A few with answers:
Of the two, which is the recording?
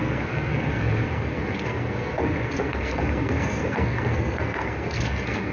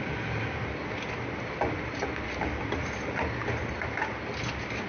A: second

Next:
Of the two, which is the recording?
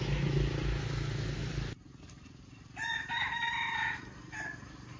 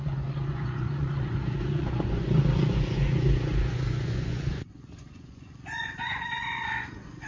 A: first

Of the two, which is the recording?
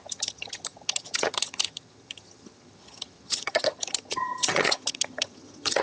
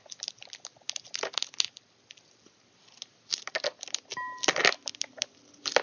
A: second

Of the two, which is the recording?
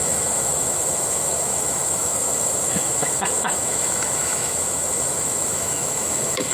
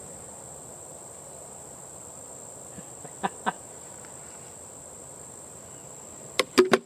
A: second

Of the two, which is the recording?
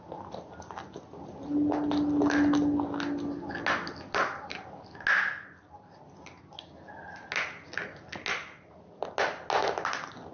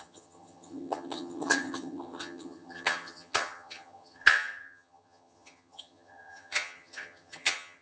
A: first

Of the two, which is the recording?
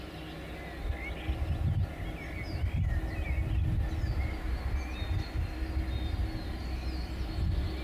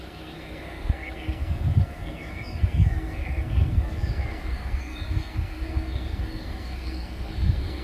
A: first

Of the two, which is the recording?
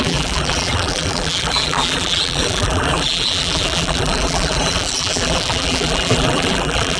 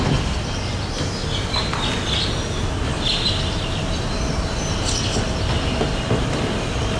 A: second